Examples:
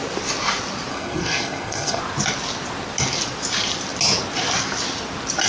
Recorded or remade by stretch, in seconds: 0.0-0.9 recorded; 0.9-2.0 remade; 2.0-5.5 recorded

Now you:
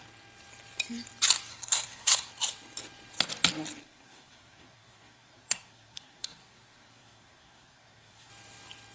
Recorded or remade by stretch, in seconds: 0.0-1.5 recorded; 1.5-2.3 remade; 2.3-3.8 recorded; 3.8-8.3 remade; 8.3-8.9 recorded

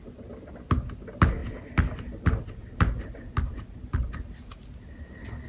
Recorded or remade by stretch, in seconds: 0.0-5.5 recorded

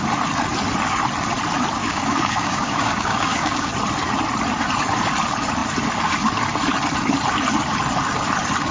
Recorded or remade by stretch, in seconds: 0.0-1.8 recorded; 1.8-3.7 remade; 3.7-8.7 recorded

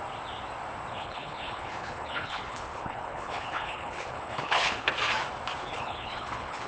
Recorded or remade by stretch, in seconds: 0.0-0.9 recorded; 0.9-4.9 remade; 4.9-5.6 recorded; 5.6-6.7 remade

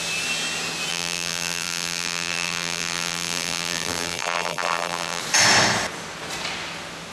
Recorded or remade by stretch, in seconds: 0.0-0.9 recorded; 0.9-5.2 remade; 5.2-7.1 recorded